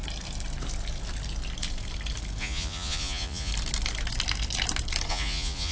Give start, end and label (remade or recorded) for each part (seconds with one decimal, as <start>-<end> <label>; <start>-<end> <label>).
0.0-2.4 recorded; 2.4-3.5 remade; 3.5-5.1 recorded; 5.1-5.7 remade